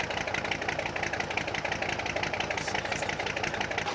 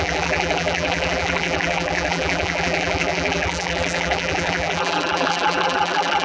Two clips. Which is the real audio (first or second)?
first